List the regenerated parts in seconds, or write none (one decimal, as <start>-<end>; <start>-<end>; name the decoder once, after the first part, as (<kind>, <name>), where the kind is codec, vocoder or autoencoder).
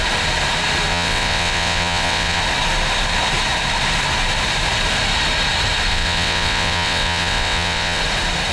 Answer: 0.9-2.4 (vocoder, WaveNeXt); 5.9-8.0